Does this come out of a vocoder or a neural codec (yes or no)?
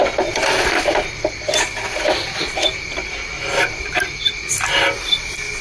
no